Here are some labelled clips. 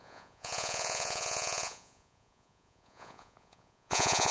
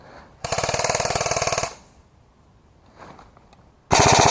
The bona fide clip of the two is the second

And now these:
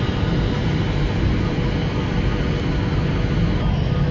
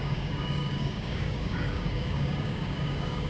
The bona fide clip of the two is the first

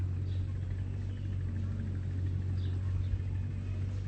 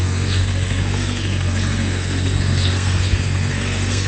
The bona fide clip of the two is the first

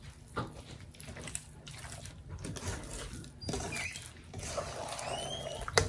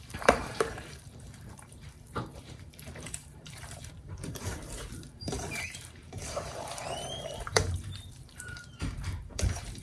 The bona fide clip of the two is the first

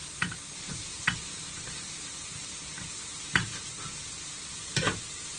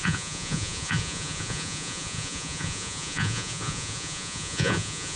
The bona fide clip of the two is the first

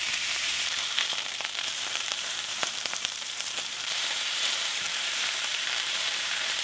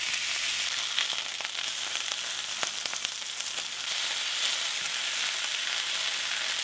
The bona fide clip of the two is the second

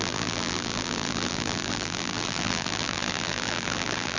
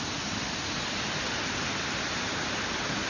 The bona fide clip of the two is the second